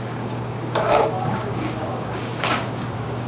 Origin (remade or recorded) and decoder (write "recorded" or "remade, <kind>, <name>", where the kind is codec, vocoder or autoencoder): remade, codec, DAC